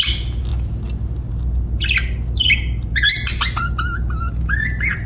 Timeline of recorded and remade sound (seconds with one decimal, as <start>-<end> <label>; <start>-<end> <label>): 0.0-5.1 recorded